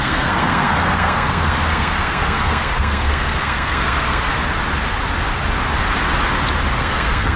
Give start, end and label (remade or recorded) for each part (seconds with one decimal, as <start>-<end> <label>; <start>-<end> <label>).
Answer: 0.0-4.3 remade; 4.3-6.7 recorded; 6.7-7.4 remade